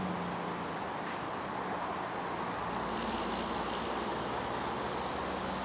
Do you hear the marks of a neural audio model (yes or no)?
no